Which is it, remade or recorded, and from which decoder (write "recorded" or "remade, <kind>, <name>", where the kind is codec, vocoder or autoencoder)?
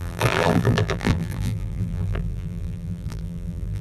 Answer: remade, vocoder, BigVGAN v2